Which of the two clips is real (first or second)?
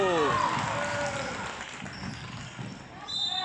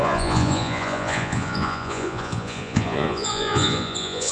first